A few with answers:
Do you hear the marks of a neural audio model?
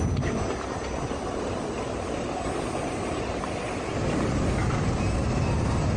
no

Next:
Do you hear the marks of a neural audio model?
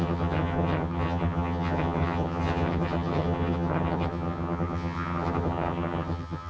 yes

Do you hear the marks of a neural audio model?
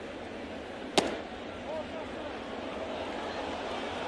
no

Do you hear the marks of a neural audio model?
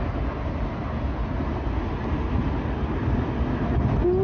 no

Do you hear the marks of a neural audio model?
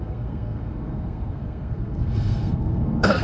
yes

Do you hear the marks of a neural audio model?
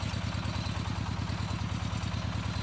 no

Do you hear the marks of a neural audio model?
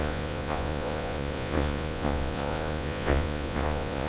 yes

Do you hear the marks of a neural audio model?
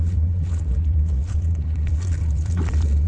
yes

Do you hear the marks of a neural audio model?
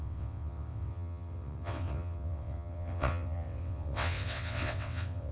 yes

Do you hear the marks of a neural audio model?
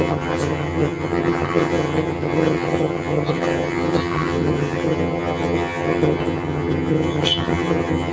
yes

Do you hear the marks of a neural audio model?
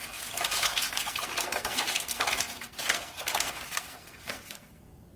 yes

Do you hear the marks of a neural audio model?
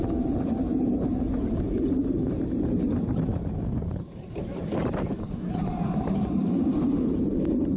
yes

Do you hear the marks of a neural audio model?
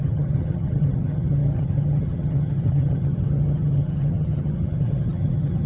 yes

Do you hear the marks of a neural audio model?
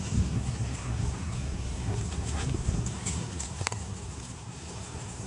yes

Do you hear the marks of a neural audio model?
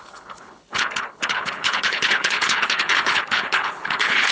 yes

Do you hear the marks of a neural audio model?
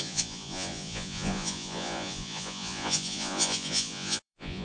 yes